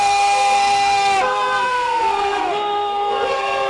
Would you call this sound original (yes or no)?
no